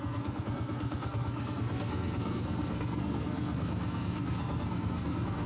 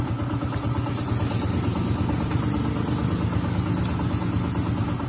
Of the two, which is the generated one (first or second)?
first